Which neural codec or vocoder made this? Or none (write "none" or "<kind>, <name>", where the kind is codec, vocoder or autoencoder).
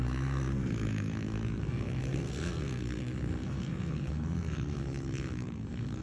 codec, SNAC